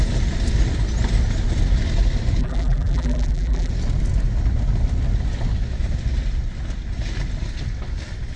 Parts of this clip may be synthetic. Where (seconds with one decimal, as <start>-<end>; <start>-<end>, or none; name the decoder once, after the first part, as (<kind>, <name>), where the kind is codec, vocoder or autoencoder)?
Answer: 2.4-3.7 (vocoder, BigVGAN v2)